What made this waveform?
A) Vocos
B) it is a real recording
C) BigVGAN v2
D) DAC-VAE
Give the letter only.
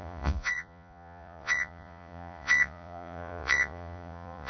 A